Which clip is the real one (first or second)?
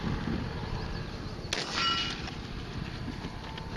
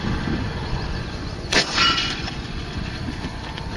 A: first